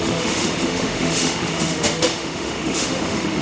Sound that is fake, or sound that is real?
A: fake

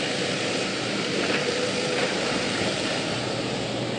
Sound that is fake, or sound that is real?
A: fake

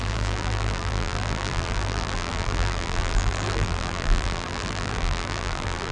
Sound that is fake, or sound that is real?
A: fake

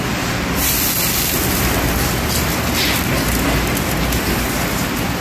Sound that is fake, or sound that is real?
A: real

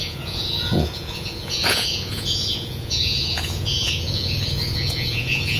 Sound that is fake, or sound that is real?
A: fake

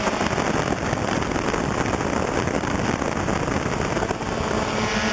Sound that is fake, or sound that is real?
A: real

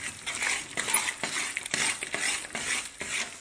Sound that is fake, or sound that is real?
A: real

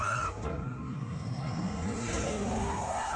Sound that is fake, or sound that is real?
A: fake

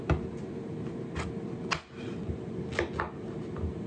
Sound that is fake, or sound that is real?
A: real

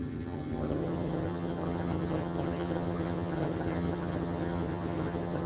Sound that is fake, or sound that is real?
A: fake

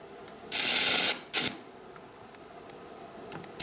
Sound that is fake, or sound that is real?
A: real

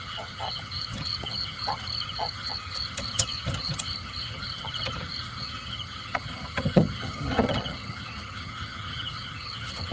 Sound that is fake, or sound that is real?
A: fake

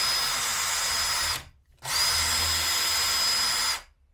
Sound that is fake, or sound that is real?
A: real